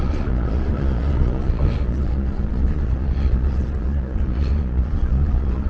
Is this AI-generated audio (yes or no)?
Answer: yes